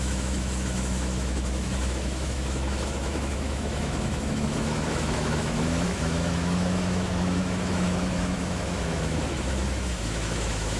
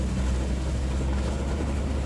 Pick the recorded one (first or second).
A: second